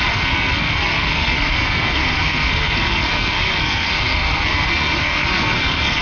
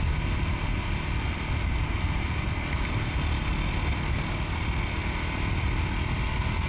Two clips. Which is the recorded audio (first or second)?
second